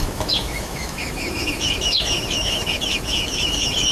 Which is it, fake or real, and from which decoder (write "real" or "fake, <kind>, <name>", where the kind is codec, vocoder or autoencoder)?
fake, autoencoder, DAC-VAE